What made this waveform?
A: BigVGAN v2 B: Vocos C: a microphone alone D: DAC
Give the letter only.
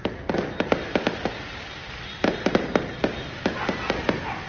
C